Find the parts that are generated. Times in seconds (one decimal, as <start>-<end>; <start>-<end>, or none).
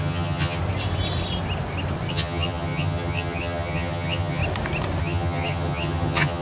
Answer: 0.0-0.6; 2.1-4.4; 5.0-6.4